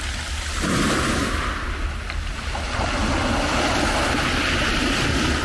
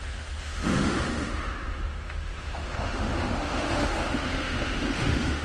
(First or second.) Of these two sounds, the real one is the first